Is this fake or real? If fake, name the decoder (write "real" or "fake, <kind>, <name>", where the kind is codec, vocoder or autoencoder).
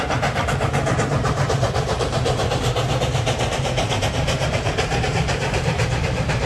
fake, vocoder, BigVGAN v2